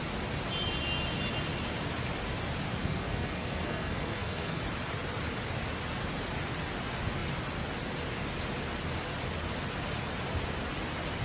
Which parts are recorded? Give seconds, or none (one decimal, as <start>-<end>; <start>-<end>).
0.0-2.8; 4.6-11.2